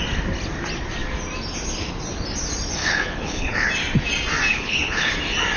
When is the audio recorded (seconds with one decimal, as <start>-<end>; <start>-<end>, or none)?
0.0-2.8; 3.7-4.5; 5.1-5.6